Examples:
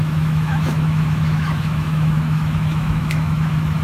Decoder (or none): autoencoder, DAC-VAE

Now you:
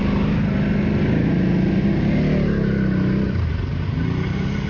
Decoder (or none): none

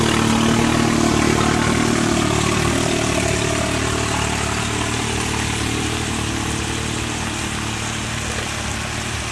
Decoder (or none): none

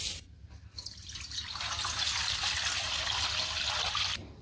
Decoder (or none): none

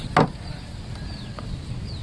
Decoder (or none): none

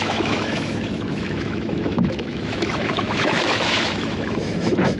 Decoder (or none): autoencoder, DAC-VAE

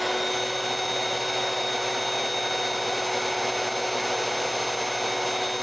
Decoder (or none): none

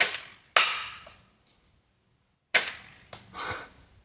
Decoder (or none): none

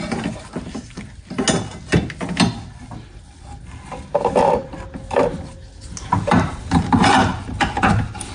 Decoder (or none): none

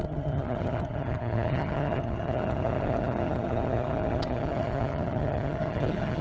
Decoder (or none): vocoder, HiFi-GAN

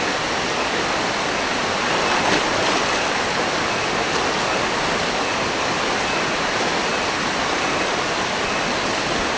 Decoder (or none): none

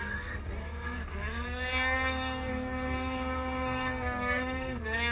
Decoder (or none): codec, SNAC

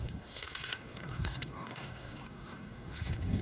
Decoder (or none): codec, SNAC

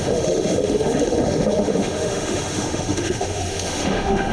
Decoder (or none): autoencoder, DAC-VAE